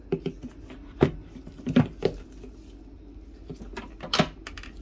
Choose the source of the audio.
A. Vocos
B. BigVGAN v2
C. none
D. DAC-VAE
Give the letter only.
C